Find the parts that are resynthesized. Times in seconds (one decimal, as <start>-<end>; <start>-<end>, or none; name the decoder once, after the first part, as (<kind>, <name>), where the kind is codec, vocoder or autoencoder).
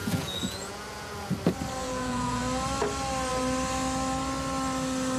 0.0-1.3 (vocoder, Vocos); 1.8-2.4